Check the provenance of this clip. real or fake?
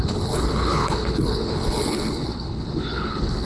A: fake